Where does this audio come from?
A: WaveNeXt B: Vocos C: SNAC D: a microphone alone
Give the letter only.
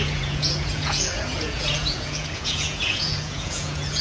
B